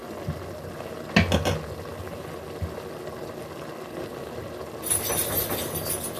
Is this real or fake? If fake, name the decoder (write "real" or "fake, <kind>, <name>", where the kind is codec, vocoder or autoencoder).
real